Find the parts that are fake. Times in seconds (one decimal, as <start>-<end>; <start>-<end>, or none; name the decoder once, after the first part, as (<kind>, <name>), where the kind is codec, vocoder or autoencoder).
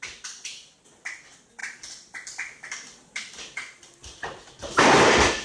none